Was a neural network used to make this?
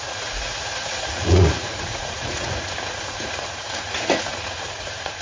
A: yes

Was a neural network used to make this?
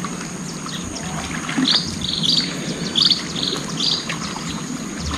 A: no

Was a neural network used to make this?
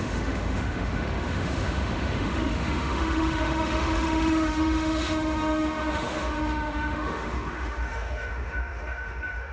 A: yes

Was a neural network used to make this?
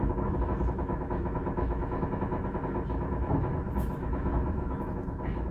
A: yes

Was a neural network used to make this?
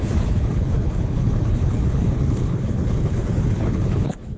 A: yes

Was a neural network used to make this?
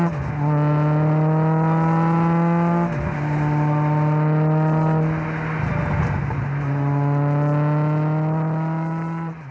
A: no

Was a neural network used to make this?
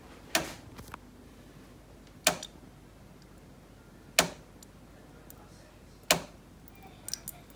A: no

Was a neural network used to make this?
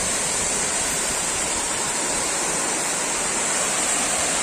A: yes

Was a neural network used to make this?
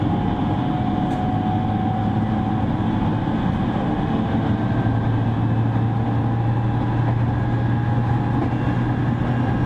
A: no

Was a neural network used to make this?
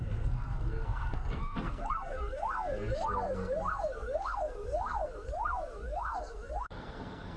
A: yes